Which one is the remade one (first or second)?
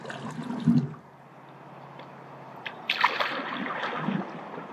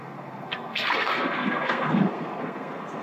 second